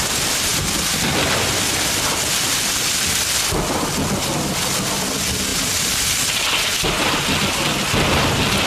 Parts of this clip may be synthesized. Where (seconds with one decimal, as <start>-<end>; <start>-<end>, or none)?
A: 0.5-2.3; 5.5-6.2; 7.0-7.9